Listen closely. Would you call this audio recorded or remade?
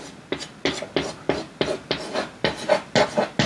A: recorded